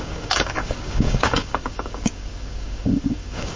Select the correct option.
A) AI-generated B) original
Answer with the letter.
A